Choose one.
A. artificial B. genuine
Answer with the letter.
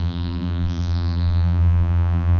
A